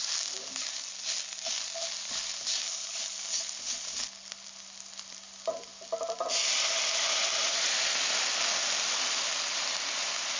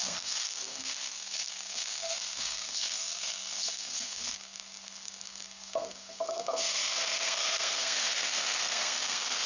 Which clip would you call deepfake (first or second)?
second